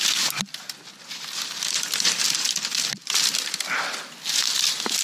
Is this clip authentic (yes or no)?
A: yes